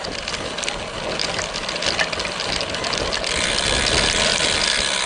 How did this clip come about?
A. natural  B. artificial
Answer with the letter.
A